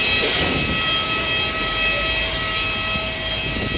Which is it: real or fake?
real